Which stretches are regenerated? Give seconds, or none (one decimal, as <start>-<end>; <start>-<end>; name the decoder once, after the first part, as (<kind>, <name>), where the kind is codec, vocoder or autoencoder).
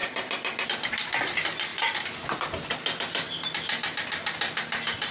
none